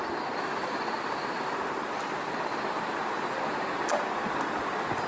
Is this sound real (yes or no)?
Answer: yes